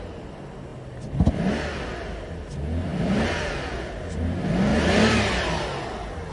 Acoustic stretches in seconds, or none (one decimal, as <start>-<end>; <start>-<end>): 0.0-2.9; 3.9-4.7; 5.8-6.3